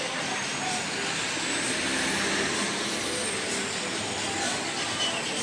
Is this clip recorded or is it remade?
recorded